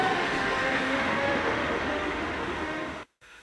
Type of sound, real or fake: fake